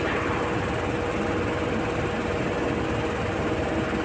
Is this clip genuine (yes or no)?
yes